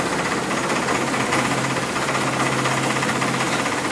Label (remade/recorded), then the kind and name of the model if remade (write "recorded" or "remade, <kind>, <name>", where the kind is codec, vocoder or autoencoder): recorded